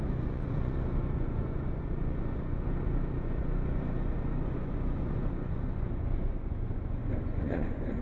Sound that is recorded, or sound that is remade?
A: remade